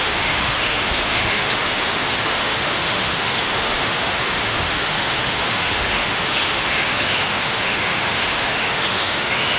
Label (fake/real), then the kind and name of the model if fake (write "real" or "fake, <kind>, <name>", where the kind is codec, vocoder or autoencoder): fake, autoencoder, DAC-VAE